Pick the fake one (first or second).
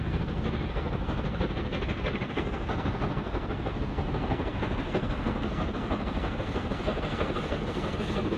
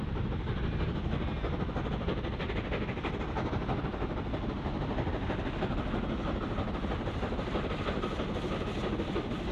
first